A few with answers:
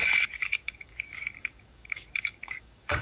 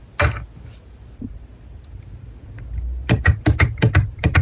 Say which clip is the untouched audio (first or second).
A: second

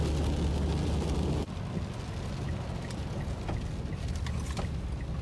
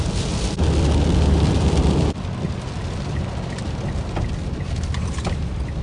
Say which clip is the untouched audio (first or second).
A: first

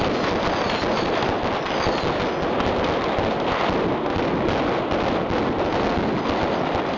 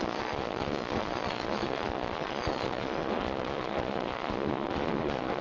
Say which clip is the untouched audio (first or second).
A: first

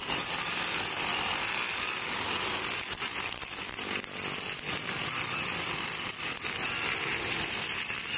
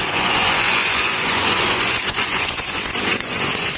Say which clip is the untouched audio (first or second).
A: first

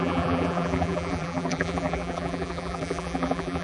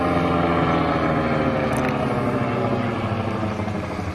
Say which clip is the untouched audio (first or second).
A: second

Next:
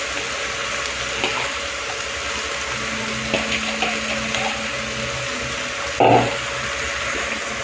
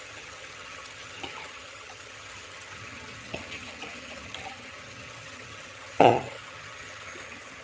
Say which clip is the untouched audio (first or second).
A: first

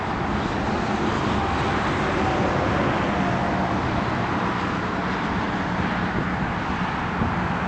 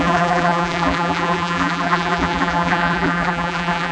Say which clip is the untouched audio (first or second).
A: first